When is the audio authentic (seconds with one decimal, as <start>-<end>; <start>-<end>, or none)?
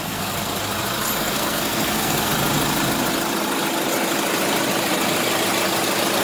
0.5-1.2; 2.3-6.2